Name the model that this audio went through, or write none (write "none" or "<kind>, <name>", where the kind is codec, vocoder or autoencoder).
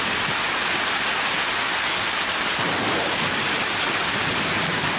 none